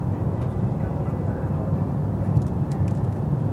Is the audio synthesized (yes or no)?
no